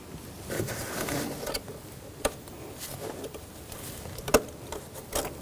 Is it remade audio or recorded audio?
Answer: recorded